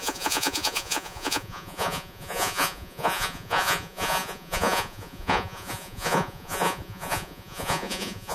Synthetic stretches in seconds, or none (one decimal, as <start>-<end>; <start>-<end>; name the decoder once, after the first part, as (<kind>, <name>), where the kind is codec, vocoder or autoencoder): 0.0-8.3 (vocoder, Vocos)